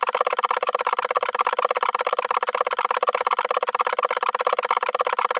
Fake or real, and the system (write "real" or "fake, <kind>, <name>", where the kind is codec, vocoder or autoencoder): real